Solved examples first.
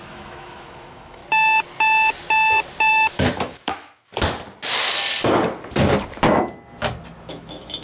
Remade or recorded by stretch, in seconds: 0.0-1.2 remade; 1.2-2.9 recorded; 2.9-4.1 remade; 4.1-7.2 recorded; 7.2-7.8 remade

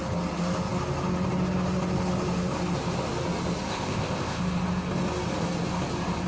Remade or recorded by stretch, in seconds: 0.0-3.7 recorded; 3.7-4.4 remade; 4.4-6.3 recorded

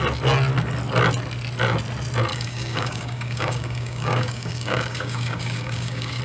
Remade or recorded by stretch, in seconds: 0.0-2.3 recorded; 2.3-6.2 remade

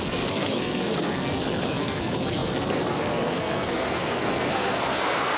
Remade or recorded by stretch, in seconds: 0.0-5.4 remade

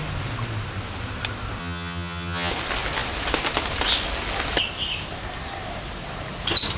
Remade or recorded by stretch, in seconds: 0.0-1.6 recorded; 1.6-2.5 remade; 2.5-6.8 recorded

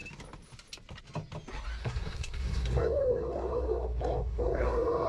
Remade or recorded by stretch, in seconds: 0.0-1.8 recorded; 1.8-5.1 remade